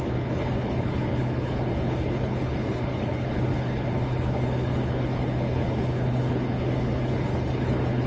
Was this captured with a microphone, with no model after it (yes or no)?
no